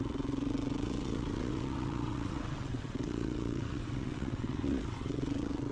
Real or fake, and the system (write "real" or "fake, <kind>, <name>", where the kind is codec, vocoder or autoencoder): fake, vocoder, WaveNeXt